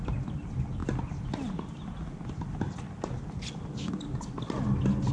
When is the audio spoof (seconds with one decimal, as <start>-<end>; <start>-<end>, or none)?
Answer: none